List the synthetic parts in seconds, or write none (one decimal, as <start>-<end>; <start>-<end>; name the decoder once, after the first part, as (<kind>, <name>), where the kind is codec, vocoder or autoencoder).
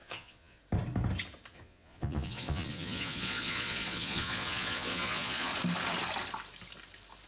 0.0-0.6 (vocoder, Vocos); 1.5-5.5